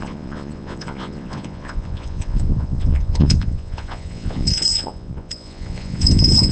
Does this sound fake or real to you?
fake